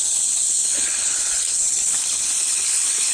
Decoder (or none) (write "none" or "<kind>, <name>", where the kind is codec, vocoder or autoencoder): codec, HILCodec